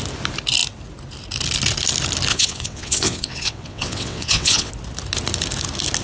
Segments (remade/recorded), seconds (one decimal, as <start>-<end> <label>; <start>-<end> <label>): 0.0-2.3 recorded; 2.3-4.7 remade; 4.7-6.0 recorded